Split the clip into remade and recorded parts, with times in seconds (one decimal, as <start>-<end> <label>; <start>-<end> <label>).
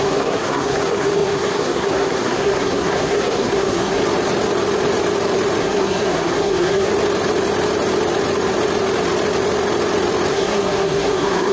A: 0.0-4.0 remade; 4.0-5.6 recorded; 5.6-6.9 remade; 6.9-10.3 recorded; 10.3-11.5 remade